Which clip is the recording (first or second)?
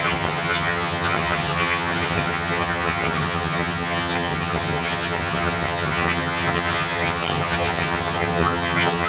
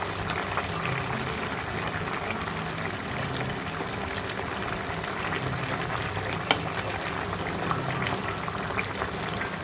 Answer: second